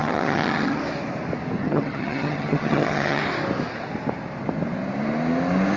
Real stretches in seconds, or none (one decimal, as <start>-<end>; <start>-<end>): 0.8-1.6; 3.2-5.8